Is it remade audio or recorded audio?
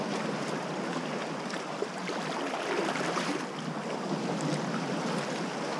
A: recorded